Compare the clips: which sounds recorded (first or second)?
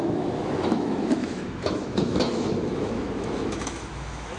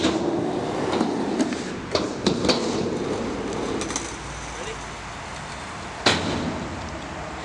second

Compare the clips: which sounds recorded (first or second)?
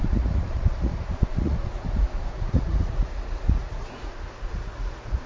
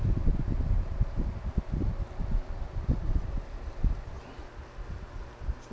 second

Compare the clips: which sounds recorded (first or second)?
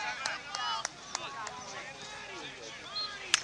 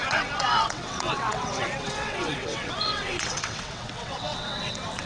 first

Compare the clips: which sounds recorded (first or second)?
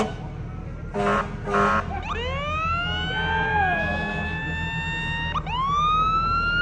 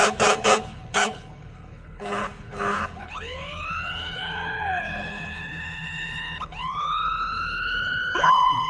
first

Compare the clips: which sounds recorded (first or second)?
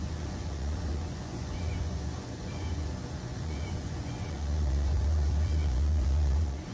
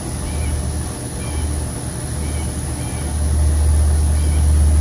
second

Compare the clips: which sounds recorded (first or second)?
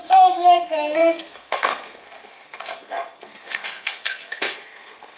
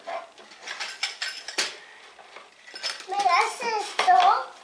second